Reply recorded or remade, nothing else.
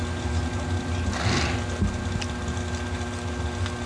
recorded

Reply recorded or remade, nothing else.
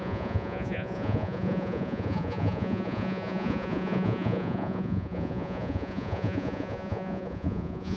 remade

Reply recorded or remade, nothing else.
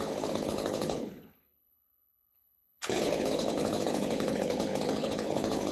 remade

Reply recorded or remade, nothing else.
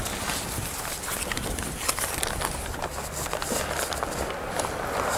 recorded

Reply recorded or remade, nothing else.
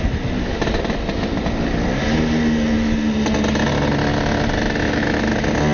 recorded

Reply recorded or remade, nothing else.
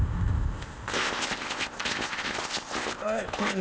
remade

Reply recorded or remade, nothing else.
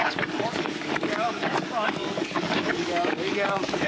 remade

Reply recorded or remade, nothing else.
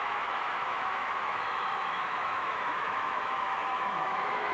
remade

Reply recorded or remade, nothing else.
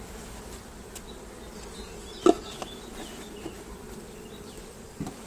recorded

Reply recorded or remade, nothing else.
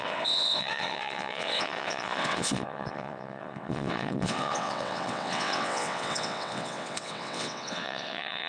remade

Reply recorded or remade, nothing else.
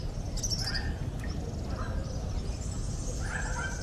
recorded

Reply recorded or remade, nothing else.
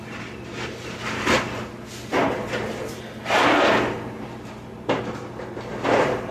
recorded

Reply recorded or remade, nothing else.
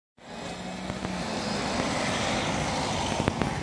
recorded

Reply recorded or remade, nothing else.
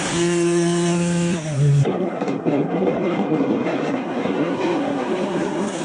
remade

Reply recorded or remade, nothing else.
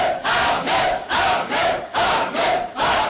remade